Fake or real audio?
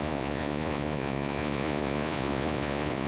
fake